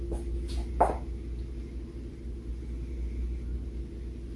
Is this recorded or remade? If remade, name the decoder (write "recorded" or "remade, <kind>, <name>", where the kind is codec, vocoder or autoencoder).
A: recorded